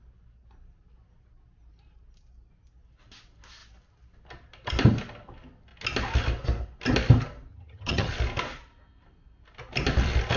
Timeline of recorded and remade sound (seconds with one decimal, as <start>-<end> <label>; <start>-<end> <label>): 0.0-7.5 recorded; 7.5-8.1 remade; 8.1-10.4 recorded